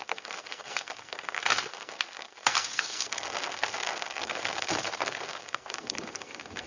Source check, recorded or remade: remade